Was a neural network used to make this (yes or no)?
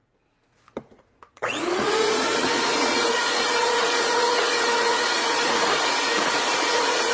yes